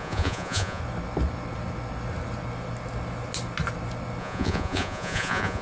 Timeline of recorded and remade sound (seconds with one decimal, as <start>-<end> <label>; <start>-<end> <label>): 0.0-0.8 remade; 0.8-4.2 recorded; 4.2-5.6 remade